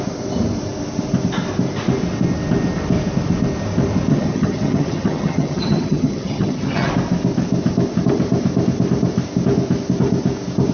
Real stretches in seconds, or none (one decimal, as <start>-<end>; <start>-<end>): 0.0-4.1; 6.9-10.7